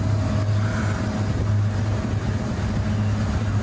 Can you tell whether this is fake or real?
real